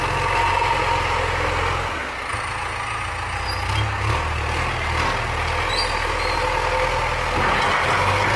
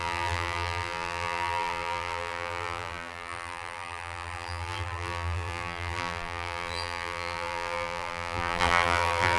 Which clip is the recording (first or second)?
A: first